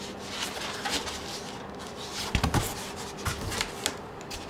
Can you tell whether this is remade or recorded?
recorded